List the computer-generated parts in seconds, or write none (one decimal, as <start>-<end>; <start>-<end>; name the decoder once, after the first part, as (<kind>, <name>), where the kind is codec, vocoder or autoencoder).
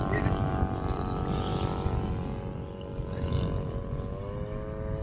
none